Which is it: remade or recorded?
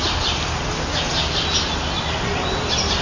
recorded